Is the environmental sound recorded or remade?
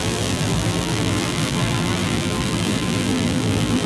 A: remade